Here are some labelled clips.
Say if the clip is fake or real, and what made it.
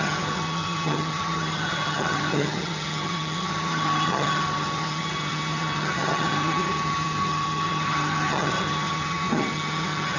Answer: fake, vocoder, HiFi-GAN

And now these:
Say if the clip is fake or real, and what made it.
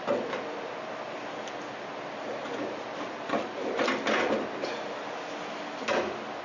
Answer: real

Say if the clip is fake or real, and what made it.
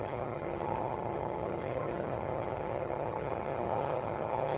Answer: fake, vocoder, HiFi-GAN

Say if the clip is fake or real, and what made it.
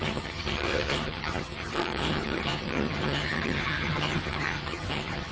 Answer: fake, vocoder, HiFi-GAN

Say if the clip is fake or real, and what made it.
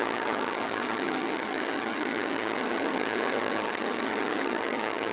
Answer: fake, vocoder, HiFi-GAN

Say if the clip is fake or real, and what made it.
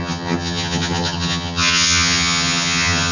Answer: fake, vocoder, HiFi-GAN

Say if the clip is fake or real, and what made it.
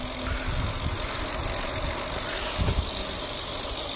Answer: real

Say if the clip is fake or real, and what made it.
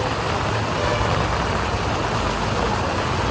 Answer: real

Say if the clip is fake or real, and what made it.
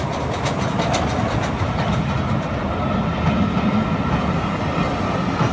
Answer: real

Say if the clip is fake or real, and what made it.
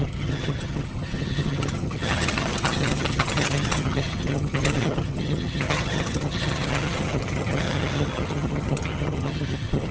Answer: fake, vocoder, HiFi-GAN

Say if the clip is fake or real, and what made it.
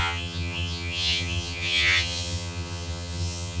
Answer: fake, vocoder, HiFi-GAN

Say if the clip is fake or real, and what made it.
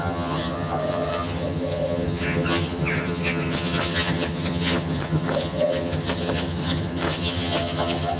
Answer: fake, vocoder, HiFi-GAN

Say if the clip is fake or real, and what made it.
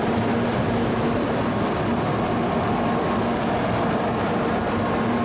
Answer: real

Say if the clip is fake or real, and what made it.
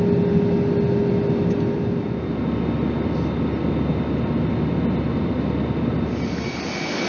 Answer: real